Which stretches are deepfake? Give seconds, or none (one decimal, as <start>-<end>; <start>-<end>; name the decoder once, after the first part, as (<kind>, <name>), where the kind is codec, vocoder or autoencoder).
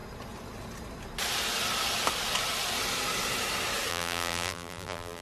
3.9-5.2 (vocoder, BigVGAN v2)